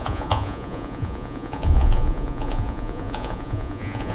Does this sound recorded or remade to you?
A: remade